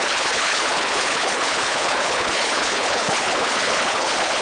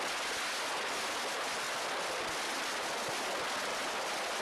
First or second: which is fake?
first